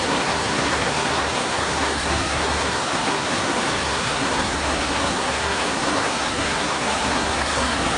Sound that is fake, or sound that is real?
fake